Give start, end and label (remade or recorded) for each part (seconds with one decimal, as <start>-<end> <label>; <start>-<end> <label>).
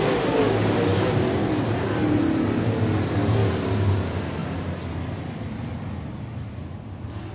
0.0-4.4 recorded; 4.4-6.1 remade; 6.1-7.3 recorded